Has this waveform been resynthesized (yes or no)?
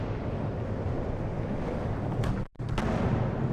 no